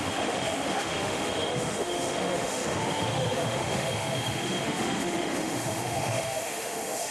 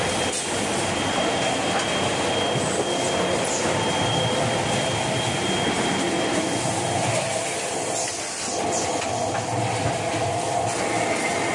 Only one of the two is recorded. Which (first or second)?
second